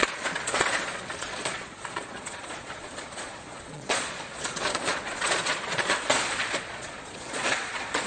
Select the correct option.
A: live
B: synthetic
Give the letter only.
B